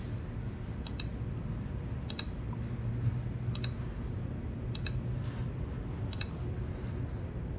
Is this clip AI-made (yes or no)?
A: no